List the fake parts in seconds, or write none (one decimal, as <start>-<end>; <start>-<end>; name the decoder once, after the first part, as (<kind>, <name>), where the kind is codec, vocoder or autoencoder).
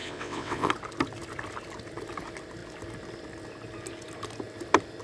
0.0-0.7 (vocoder, WaveNeXt)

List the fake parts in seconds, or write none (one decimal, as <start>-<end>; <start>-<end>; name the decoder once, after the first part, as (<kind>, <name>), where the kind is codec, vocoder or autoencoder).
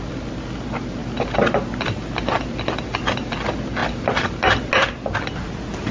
none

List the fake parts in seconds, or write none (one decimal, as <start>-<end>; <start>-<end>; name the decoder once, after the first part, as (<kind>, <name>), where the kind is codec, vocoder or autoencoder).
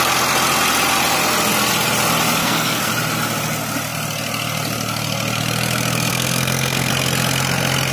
2.4-2.9 (codec, SNAC); 6.1-6.9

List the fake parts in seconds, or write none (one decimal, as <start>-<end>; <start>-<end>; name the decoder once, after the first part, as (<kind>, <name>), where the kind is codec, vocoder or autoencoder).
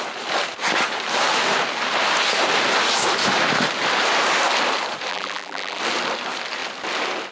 5.1-5.8 (vocoder, BigVGAN v2)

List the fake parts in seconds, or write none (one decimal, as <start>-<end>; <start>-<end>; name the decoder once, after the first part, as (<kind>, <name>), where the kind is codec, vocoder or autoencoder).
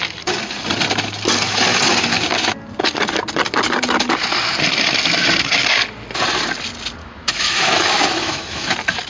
7.0-8.7 (autoencoder, DAC-VAE)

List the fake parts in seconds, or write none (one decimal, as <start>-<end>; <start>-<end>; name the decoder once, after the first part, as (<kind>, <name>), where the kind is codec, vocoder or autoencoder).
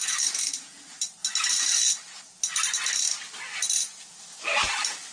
none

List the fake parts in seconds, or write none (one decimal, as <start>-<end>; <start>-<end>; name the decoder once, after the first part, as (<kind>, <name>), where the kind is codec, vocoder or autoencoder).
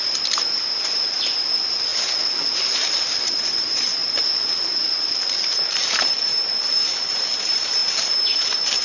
0.0-1.9 (vocoder, BigVGAN v2); 3.1-8.8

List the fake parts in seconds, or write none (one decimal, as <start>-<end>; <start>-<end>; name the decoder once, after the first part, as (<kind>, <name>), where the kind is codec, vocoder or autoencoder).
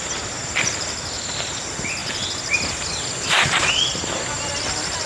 none